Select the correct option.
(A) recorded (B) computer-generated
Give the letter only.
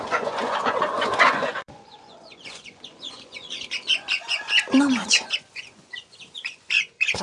B